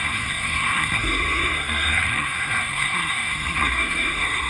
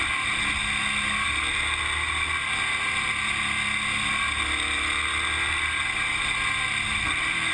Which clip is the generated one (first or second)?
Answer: first